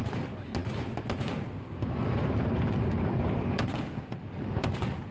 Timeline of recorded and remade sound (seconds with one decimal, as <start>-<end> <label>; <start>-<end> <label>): 0.0-5.1 recorded